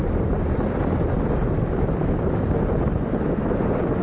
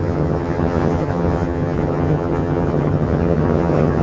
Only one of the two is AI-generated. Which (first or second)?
second